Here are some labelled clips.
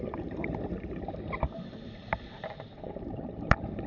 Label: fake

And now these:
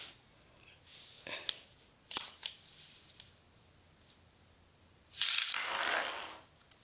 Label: real